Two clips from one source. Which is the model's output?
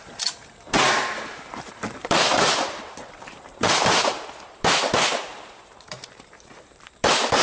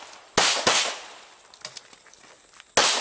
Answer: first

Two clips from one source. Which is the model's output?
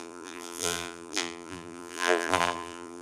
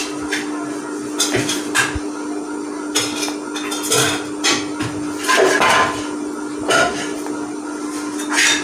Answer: first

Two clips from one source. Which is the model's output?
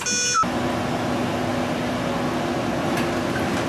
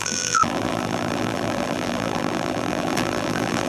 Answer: second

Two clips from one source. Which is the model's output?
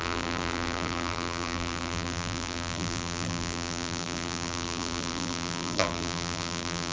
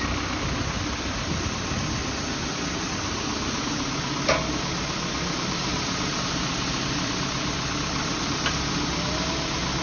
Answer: first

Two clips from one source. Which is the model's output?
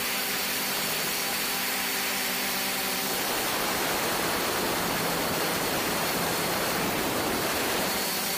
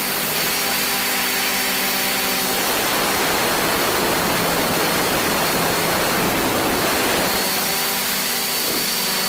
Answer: first